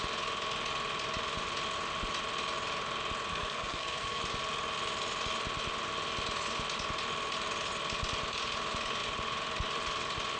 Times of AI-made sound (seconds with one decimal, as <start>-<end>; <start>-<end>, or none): 3.3-4.2